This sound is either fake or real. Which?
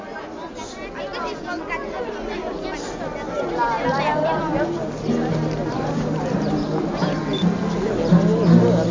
real